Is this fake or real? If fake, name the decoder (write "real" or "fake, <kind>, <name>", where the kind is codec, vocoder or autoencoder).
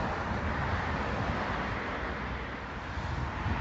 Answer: real